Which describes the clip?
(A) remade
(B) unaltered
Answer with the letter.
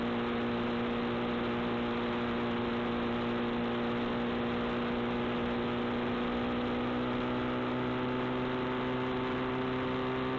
B